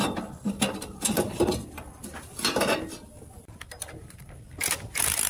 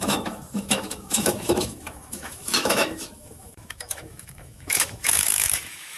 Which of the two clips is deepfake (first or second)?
second